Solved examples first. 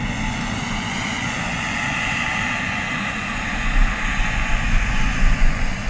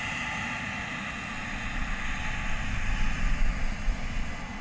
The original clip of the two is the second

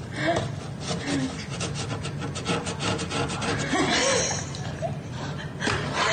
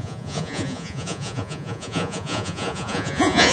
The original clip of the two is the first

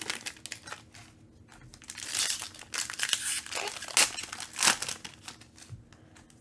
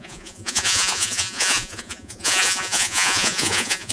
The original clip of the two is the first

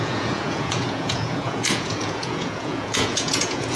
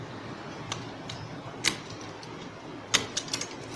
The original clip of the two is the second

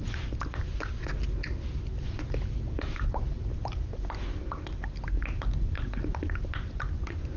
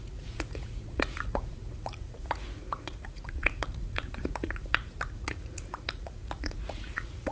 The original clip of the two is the first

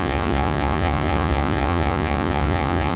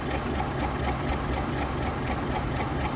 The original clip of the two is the second